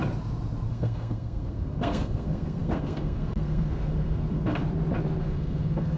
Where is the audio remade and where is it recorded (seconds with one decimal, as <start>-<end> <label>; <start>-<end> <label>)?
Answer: 0.0-0.7 recorded; 0.7-4.6 remade; 4.6-5.2 recorded; 5.2-6.0 remade

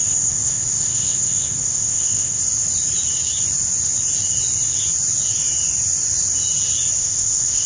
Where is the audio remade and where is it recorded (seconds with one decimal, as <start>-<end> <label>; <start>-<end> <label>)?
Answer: 0.0-2.4 remade; 2.4-7.0 recorded; 7.0-7.7 remade

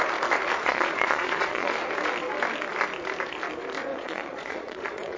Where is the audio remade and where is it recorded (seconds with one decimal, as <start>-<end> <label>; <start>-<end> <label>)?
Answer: 0.0-0.6 recorded; 0.6-1.7 remade; 1.7-3.9 recorded; 3.9-5.2 remade

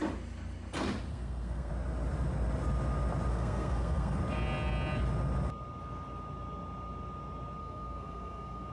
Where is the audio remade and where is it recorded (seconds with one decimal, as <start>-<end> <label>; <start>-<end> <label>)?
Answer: 0.0-1.1 recorded; 1.1-1.7 remade; 1.7-3.3 recorded; 3.3-4.2 remade; 4.2-7.6 recorded; 7.6-8.7 remade

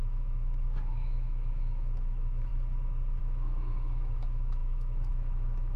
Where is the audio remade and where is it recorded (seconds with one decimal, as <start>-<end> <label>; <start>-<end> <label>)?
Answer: 0.0-2.5 remade; 2.5-3.2 recorded; 3.2-5.8 remade

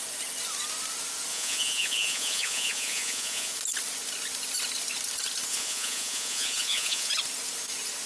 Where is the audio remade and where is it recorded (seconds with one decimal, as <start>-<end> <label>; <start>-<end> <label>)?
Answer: 0.0-1.3 recorded; 1.3-3.5 remade; 3.5-5.5 recorded; 5.5-7.1 remade; 7.1-8.1 recorded

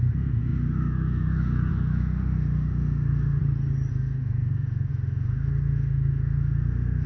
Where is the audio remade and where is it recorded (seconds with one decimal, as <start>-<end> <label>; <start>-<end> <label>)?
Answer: 0.0-3.4 remade; 3.4-3.9 recorded; 3.9-7.1 remade